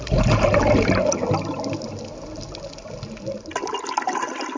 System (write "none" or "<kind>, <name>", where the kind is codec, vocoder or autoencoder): none